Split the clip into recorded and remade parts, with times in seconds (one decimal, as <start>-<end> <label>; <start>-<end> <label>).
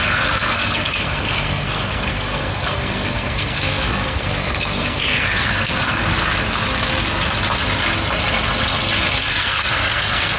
0.0-6.0 remade; 6.0-9.3 recorded; 9.3-10.4 remade